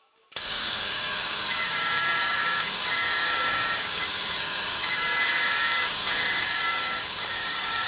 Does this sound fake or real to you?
fake